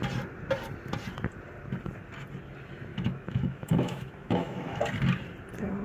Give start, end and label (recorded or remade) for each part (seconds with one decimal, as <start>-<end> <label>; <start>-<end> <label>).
0.0-2.9 recorded; 2.9-4.8 remade; 4.8-5.8 recorded

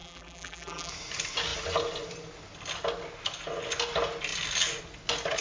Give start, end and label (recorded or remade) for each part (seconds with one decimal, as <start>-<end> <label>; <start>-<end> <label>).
0.0-0.9 remade; 0.9-5.4 recorded